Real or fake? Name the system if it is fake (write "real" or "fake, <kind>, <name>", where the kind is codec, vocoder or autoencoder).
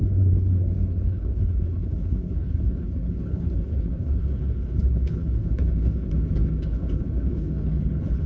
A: fake, codec, HILCodec